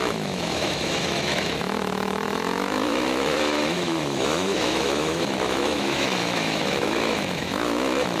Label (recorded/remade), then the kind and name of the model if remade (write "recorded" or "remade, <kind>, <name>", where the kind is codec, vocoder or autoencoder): remade, autoencoder, DAC-VAE